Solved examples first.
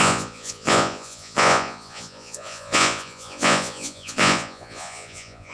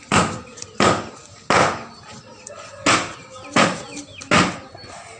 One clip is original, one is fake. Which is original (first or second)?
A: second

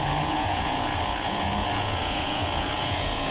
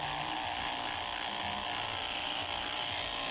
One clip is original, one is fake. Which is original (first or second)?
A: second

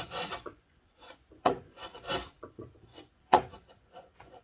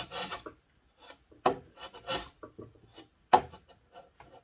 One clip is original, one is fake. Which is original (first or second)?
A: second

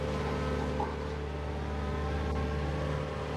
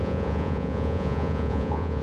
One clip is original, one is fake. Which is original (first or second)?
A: first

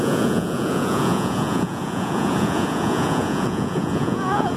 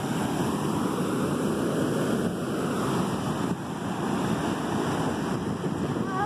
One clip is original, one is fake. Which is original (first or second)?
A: second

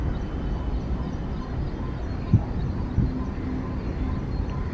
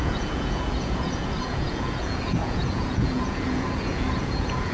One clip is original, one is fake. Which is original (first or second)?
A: first